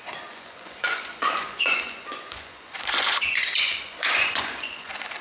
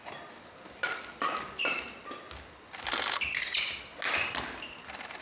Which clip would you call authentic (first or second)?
second